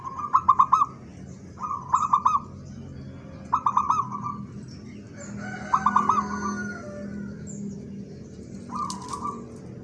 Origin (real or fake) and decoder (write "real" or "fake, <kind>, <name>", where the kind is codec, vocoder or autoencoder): real